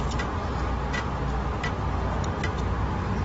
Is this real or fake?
real